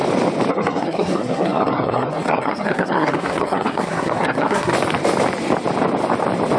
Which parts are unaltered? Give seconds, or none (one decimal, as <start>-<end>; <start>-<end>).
0.0-0.5; 4.7-6.6

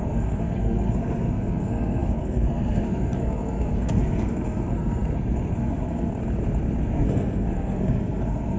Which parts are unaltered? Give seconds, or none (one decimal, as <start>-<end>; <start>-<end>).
6.1-6.8

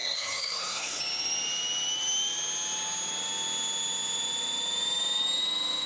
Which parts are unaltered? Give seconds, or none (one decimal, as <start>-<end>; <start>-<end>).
1.0-5.9

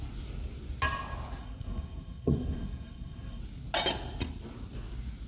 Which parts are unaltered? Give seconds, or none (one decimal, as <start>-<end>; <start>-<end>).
0.0-1.4; 3.4-5.3

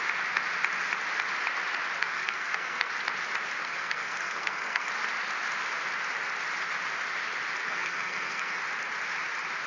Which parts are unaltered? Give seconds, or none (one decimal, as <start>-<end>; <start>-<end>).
0.0-2.0; 2.9-3.6; 4.9-7.6; 8.6-9.7